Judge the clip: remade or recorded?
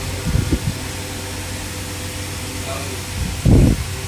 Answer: recorded